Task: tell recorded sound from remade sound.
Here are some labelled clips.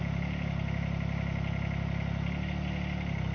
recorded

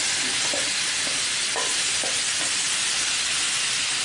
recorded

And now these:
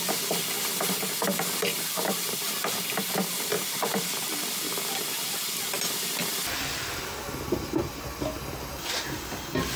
recorded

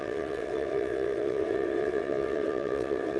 remade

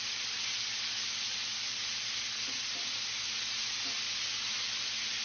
recorded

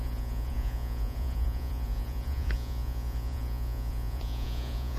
remade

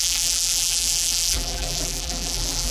remade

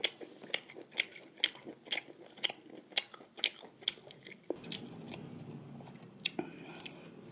recorded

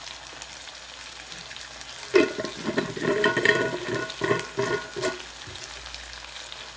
recorded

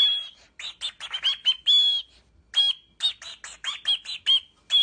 recorded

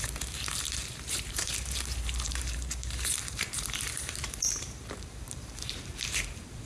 remade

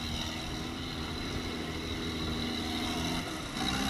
recorded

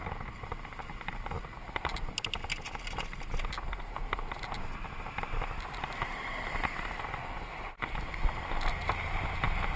recorded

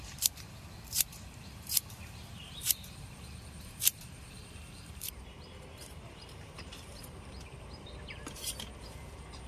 remade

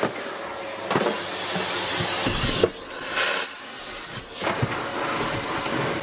recorded